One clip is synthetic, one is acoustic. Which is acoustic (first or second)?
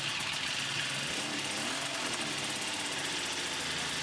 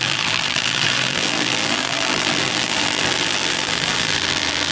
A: first